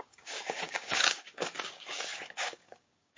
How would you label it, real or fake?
fake